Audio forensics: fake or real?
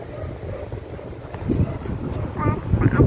real